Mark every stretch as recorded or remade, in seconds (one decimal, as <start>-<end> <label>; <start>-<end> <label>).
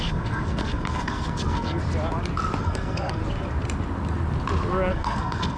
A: 0.0-1.8 remade; 1.8-2.6 recorded; 2.6-3.2 remade; 3.2-4.9 recorded; 4.9-5.6 remade